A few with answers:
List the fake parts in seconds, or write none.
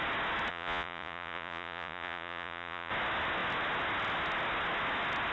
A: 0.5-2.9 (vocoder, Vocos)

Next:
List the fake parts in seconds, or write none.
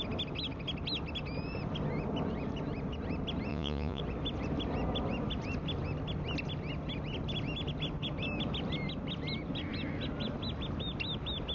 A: 3.5-4.0 (vocoder, Vocos)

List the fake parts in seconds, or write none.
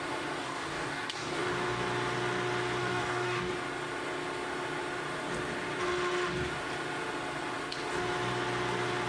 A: 0.4-1.5 (codec, DAC); 2.8-3.5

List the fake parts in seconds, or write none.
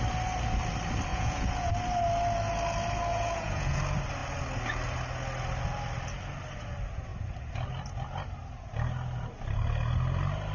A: 1.1-1.7 (vocoder, Vocos); 3.1-3.8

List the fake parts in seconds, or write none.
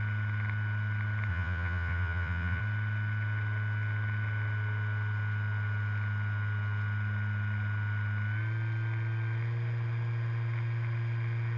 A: 1.3-2.6 (vocoder, Vocos)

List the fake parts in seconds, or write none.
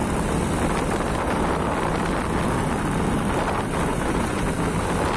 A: 3.9-4.5 (vocoder, Vocos)